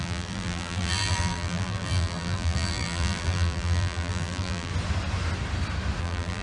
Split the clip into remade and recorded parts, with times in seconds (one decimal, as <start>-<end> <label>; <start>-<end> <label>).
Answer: 0.0-4.7 remade; 4.7-6.0 recorded; 6.0-6.4 remade